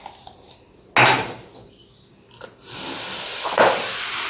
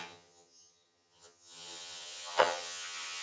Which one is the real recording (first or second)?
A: first